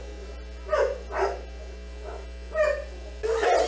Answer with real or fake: real